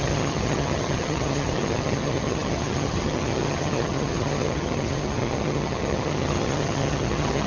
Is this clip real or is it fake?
fake